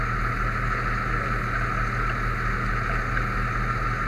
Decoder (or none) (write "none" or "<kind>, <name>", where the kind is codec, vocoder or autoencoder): none